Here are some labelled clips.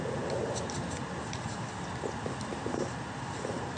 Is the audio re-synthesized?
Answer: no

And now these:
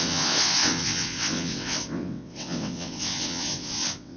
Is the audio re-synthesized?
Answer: yes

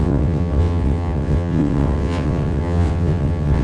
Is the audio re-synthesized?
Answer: yes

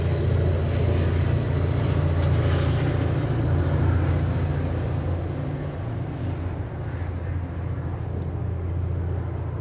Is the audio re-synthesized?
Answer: no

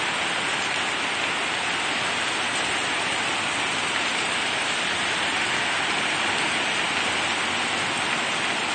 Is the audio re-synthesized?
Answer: no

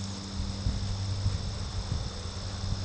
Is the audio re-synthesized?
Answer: no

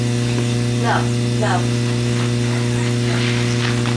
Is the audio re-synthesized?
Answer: no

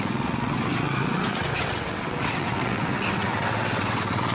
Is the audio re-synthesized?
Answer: yes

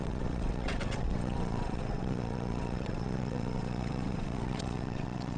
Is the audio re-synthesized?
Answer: yes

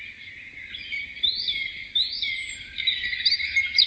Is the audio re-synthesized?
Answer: no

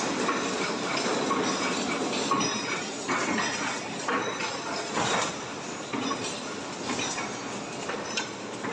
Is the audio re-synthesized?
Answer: no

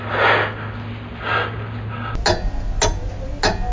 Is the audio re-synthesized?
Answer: no